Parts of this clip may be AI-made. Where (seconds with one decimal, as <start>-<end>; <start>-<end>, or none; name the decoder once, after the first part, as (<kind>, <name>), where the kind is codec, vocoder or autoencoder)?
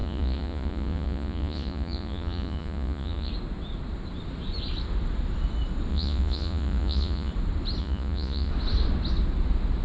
0.0-3.3 (vocoder, Vocos); 5.9-7.3; 7.8-8.5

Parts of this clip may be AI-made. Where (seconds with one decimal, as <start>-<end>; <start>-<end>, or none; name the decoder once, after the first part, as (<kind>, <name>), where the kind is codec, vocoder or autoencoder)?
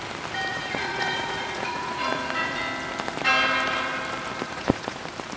0.5-2.6 (vocoder, Vocos); 4.4-5.0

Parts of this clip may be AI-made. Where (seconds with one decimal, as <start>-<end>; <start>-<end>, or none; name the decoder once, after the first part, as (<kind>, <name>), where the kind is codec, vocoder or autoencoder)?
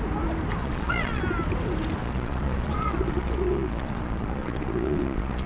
0.6-1.2 (vocoder, Vocos); 2.0-5.5